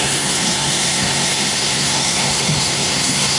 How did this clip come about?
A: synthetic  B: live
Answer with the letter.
A